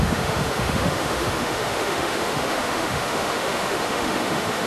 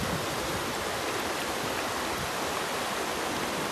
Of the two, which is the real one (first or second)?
second